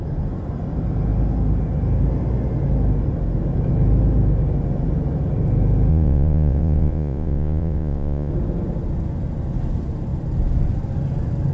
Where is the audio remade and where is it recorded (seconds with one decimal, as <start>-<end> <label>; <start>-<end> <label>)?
0.0-5.9 recorded; 5.9-8.3 remade; 8.3-11.5 recorded